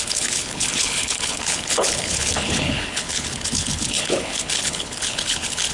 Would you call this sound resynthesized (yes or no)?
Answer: yes